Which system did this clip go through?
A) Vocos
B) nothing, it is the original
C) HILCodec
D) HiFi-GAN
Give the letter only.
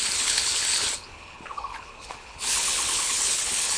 C